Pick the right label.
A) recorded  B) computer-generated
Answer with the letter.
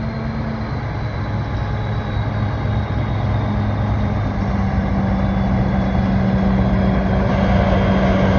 A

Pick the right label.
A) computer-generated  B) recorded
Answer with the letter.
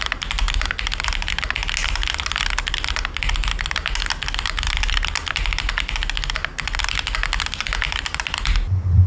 B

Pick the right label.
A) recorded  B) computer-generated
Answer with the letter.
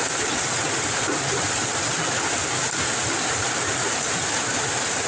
A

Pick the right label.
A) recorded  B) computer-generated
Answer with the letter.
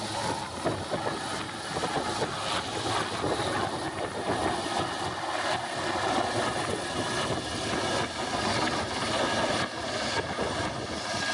A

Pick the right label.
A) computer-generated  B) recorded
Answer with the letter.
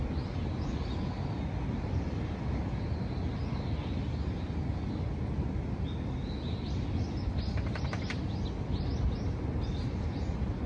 B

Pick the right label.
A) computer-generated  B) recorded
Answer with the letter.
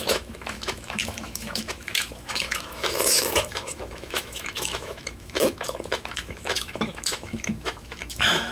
A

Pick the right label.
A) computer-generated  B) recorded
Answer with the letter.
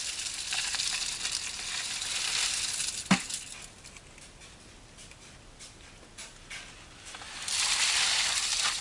B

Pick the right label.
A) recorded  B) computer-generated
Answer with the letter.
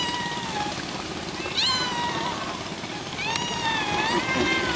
A